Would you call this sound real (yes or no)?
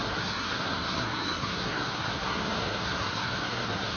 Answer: no